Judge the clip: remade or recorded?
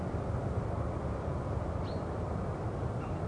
recorded